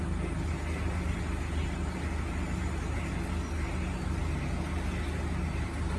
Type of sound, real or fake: real